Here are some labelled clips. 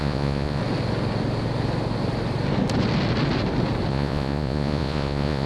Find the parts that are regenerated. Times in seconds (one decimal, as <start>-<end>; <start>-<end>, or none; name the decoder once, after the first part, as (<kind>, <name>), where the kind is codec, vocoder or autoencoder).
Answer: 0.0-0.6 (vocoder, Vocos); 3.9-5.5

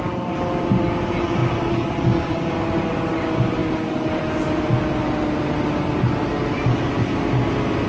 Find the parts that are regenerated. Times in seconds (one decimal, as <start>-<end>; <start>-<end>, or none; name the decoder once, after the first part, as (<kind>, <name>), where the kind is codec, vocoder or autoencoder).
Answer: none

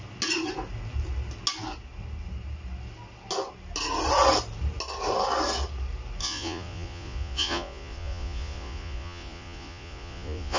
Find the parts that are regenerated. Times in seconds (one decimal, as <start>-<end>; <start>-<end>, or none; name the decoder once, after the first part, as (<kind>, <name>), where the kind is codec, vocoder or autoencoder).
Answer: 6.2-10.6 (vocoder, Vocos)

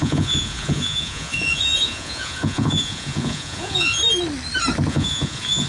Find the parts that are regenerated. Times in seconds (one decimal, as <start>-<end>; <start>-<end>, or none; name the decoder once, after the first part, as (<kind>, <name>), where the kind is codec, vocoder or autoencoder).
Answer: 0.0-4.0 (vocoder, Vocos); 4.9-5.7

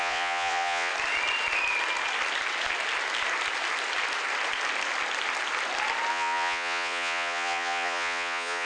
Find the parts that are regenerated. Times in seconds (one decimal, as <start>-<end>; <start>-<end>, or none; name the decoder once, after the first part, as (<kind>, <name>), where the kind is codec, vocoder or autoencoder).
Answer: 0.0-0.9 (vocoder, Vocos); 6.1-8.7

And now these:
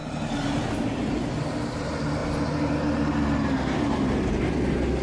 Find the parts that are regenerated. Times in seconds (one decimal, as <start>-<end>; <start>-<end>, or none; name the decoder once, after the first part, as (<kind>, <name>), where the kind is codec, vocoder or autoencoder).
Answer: none